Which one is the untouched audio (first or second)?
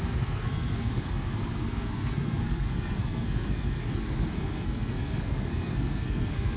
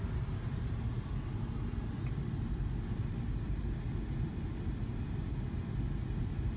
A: second